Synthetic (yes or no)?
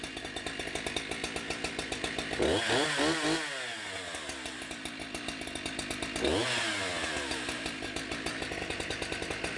no